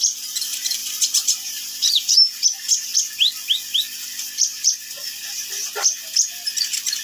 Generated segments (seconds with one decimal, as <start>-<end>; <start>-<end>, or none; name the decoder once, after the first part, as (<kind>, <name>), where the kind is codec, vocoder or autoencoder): 0.0-2.9 (vocoder, BigVGAN v2); 6.6-7.0